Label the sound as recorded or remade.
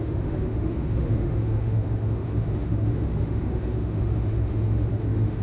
remade